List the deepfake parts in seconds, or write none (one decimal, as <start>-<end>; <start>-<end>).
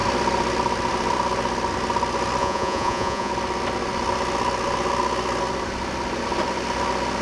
2.4-3.3